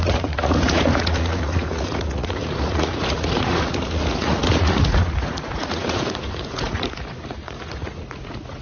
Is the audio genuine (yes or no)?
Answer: no